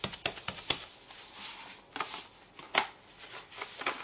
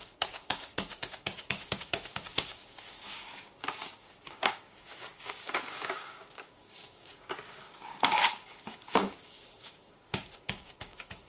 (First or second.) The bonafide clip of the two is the first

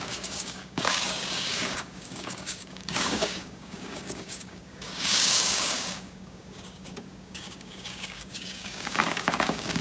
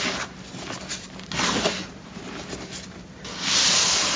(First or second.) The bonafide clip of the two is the second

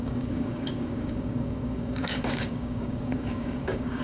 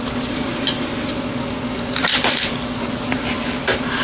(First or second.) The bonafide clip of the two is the second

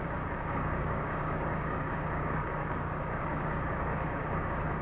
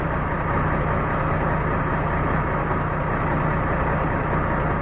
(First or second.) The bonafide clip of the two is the second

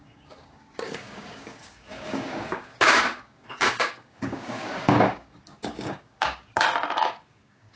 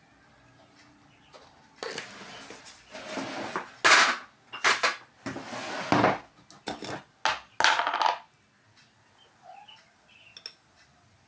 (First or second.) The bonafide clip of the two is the second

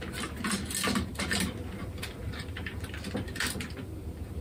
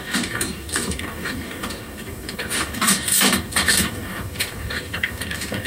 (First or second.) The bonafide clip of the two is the first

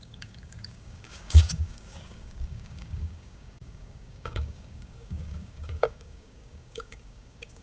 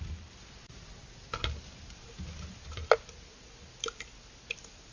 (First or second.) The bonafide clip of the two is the second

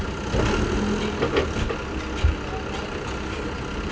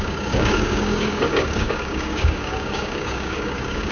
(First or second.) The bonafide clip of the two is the first